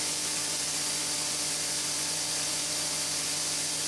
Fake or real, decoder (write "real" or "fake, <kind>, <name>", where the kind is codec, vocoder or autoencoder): fake, vocoder, Vocos